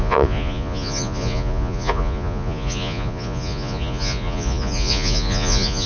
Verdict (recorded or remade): remade